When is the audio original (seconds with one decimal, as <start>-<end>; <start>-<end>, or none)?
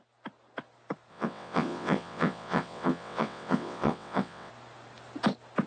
0.0-1.1; 4.5-5.7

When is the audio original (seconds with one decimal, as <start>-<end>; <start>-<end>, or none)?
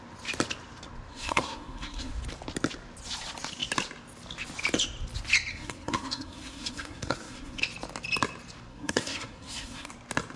0.0-1.1; 2.1-5.5; 7.6-8.7; 9.9-10.4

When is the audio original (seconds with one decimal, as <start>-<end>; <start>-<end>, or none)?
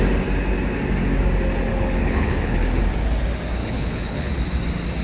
0.0-1.7; 2.8-3.6; 4.3-5.0